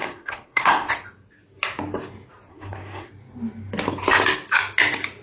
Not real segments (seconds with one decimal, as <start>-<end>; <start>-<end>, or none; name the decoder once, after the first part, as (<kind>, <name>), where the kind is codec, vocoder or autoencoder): 0.0-0.9 (codec, SNAC); 2.5-3.1